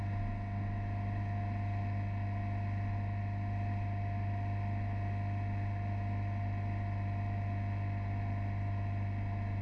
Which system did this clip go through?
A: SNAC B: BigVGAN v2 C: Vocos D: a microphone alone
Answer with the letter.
D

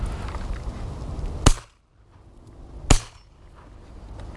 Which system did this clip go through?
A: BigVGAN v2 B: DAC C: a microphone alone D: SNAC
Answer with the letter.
C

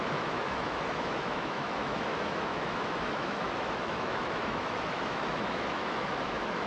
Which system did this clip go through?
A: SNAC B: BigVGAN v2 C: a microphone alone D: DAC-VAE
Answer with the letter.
D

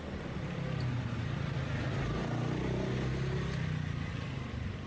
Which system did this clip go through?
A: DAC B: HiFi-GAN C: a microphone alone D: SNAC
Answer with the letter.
C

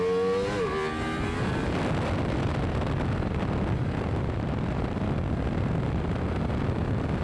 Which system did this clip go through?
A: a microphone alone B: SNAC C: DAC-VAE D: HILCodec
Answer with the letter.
A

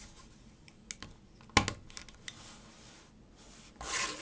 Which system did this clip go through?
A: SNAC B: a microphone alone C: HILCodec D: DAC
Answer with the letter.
B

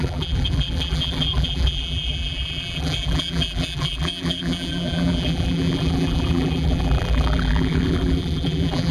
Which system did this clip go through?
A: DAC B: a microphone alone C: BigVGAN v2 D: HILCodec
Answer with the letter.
C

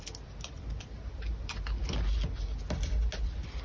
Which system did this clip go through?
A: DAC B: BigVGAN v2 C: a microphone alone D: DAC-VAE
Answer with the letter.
C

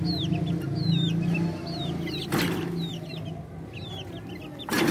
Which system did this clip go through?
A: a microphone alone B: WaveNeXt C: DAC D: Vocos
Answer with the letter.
A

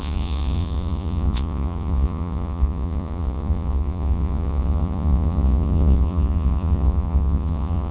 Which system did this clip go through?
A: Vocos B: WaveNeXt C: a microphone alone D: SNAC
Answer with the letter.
A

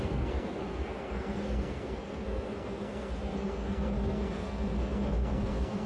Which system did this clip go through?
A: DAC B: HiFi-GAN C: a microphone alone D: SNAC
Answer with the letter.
D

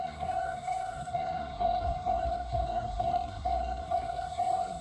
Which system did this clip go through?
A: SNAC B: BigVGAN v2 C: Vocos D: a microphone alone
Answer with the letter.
A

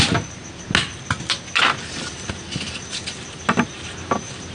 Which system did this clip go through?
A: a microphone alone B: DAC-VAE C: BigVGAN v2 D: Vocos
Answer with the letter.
A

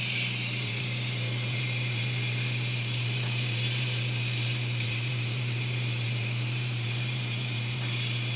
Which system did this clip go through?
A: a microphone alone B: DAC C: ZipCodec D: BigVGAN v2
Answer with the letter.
D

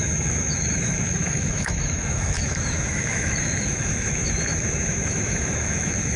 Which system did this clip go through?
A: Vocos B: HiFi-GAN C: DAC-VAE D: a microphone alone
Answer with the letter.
C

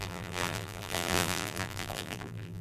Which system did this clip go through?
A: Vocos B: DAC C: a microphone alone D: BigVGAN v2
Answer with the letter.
D